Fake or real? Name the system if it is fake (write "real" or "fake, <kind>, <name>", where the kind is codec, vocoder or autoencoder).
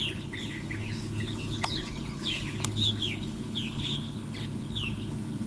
fake, codec, HILCodec